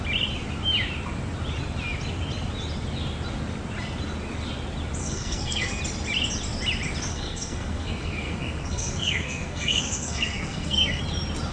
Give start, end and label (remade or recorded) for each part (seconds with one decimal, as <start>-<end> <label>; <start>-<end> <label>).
0.0-5.0 recorded; 5.0-5.8 remade; 5.8-7.1 recorded; 7.1-11.0 remade; 11.0-11.5 recorded